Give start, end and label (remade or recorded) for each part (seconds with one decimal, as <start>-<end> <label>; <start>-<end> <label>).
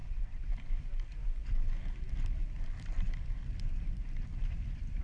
0.0-0.5 remade; 0.5-5.0 recorded